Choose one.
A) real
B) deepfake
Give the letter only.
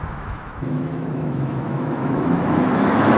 B